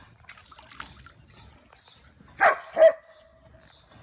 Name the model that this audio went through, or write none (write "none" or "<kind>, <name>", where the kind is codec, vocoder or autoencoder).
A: none